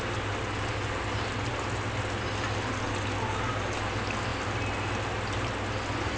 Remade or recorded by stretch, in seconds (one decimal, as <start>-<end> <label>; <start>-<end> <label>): 0.0-6.2 recorded

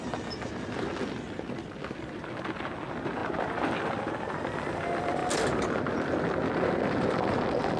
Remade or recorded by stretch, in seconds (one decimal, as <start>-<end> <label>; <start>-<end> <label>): 0.0-7.8 recorded

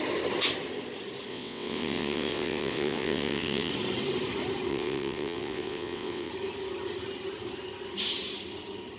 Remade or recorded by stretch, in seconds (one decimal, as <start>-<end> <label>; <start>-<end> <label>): 0.0-1.3 recorded; 1.3-3.7 remade; 3.7-4.7 recorded; 4.7-6.3 remade; 6.3-9.0 recorded

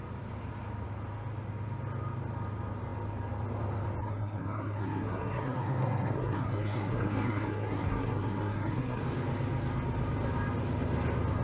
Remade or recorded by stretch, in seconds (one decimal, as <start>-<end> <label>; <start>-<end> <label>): 0.0-4.0 recorded; 4.0-9.0 remade; 9.0-11.4 recorded

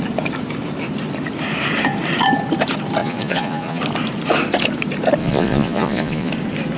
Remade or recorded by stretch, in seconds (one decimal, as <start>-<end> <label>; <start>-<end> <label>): 0.0-3.0 recorded; 3.0-3.8 remade; 3.8-5.2 recorded; 5.2-6.3 remade; 6.3-6.8 recorded

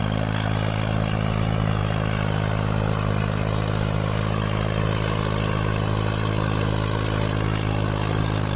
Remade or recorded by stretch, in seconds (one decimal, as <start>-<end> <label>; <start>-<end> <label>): 0.0-8.6 recorded

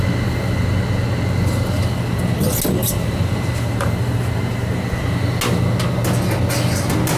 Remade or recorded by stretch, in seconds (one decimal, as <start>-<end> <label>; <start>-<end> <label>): 0.0-2.8 recorded; 2.8-4.8 remade; 4.8-7.2 recorded

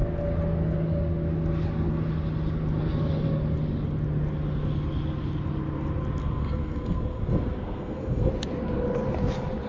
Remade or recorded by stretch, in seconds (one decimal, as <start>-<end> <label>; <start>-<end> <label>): 0.0-6.2 recorded; 6.2-8.3 remade; 8.3-9.7 recorded